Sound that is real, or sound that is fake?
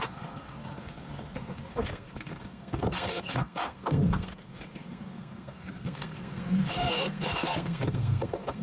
fake